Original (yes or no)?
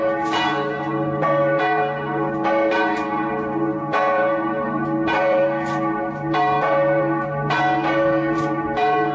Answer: no